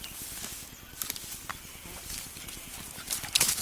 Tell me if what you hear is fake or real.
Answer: real